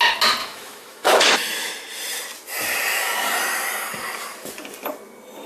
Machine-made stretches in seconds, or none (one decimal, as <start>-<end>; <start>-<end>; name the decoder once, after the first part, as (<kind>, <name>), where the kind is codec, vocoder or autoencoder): 0.4-1.7 (autoencoder, DAC-VAE)